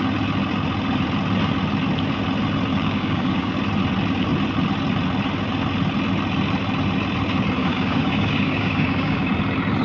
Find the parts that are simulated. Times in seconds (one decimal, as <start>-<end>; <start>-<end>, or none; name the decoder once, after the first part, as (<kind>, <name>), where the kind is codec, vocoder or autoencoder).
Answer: 2.7-3.5 (codec, DAC); 7.6-9.3

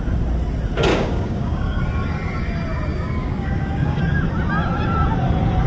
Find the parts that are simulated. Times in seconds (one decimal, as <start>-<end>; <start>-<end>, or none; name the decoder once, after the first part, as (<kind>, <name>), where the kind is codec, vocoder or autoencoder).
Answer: 0.9-1.8 (codec, DAC); 2.9-4.0